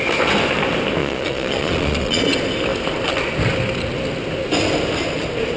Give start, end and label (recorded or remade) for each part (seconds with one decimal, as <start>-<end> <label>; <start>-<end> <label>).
0.0-1.0 recorded; 1.0-2.2 remade; 2.2-5.6 recorded